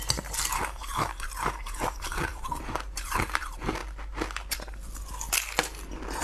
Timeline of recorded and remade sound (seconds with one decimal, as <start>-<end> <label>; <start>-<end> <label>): 0.0-3.8 remade; 3.8-6.2 recorded